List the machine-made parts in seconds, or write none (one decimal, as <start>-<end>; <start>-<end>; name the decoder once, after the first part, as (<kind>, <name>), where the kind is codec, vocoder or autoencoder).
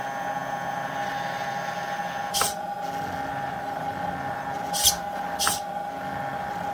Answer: none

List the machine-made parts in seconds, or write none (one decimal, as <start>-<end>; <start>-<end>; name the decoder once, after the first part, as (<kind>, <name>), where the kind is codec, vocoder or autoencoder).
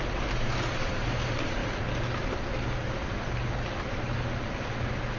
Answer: none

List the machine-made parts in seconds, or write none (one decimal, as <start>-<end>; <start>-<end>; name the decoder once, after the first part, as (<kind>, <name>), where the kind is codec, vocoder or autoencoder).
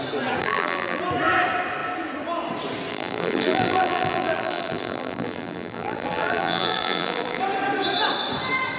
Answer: 0.4-1.0 (vocoder, BigVGAN v2); 2.9-7.4